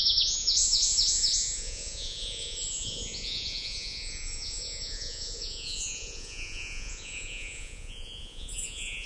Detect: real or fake fake